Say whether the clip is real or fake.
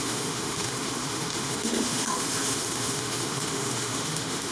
fake